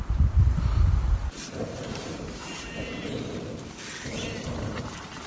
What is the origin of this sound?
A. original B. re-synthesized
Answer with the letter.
B